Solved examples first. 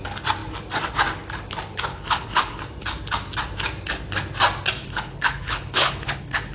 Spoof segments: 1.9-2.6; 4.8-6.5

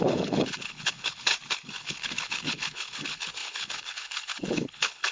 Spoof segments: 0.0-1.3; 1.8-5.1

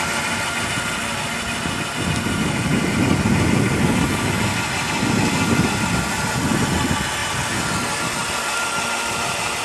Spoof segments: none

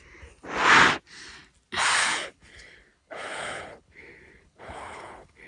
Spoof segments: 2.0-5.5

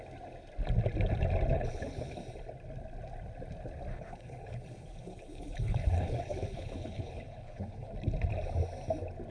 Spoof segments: 1.5-2.2; 3.9-7.9

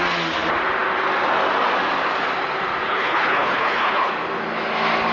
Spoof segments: 2.9-4.1